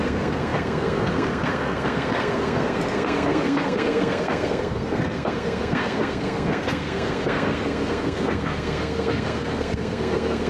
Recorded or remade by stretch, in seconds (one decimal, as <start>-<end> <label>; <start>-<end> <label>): 0.0-10.5 remade